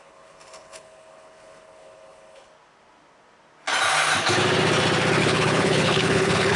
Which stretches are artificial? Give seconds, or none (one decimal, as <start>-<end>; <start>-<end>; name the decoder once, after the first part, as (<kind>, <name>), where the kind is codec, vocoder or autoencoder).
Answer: 0.0-2.5 (codec, HILCodec); 5.2-6.6